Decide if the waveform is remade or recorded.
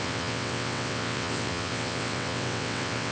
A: remade